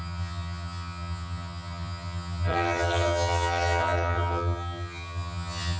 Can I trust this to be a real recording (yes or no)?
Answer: no